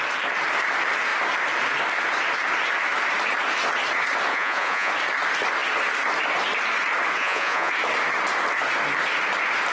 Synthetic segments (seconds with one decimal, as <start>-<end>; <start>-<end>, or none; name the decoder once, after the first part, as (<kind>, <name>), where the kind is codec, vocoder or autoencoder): 4.3-4.9 (vocoder, Vocos); 7.2-7.7